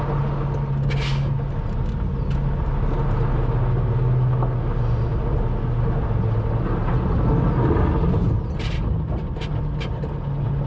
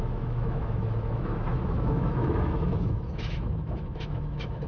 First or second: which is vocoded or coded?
second